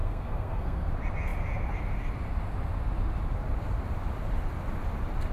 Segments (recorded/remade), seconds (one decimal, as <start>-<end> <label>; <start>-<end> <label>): 0.0-0.9 remade; 0.9-5.3 recorded

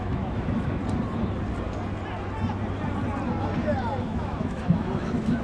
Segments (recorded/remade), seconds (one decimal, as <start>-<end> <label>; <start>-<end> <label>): 0.0-0.8 remade; 0.8-4.0 recorded; 4.0-5.4 remade

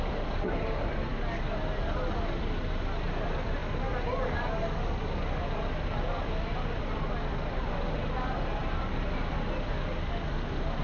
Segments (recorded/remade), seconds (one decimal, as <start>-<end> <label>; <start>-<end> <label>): 0.0-10.8 recorded

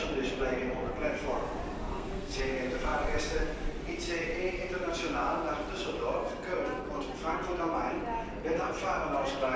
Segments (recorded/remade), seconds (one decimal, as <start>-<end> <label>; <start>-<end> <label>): 0.0-1.9 recorded; 1.9-2.4 remade; 2.4-9.6 recorded

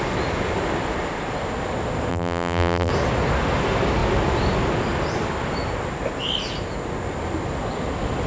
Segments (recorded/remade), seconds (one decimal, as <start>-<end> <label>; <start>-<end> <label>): 0.0-2.1 recorded; 2.1-2.9 remade; 2.9-8.3 recorded

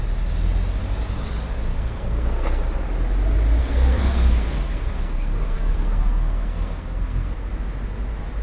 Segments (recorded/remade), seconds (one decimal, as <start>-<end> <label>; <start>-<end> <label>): 0.0-1.7 recorded; 1.7-2.6 remade; 2.6-3.6 recorded; 3.6-7.5 remade; 7.5-8.4 recorded